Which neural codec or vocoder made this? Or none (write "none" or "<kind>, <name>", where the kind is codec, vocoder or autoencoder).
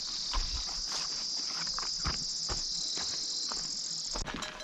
none